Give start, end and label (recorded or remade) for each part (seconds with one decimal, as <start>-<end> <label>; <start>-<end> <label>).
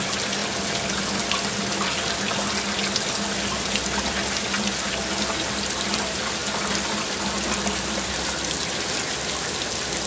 0.0-10.1 recorded